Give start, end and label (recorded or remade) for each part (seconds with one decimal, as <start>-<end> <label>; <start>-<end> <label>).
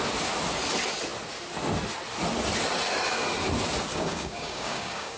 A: 0.0-3.9 recorded; 3.9-5.2 remade